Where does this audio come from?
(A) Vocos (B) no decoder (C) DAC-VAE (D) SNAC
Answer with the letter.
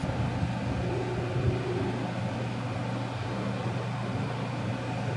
B